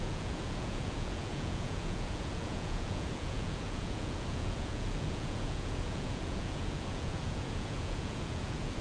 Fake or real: fake